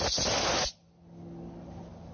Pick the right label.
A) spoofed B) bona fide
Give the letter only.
B